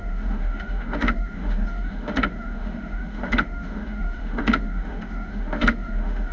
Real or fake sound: fake